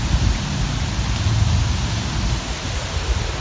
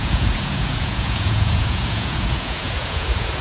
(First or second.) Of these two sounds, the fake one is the second